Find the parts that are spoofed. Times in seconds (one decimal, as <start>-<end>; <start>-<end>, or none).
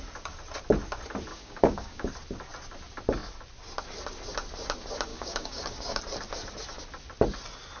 1.3-2.1; 5.1-6.0